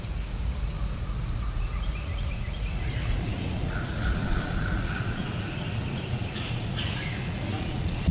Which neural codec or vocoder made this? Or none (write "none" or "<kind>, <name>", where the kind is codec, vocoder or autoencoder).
vocoder, Vocos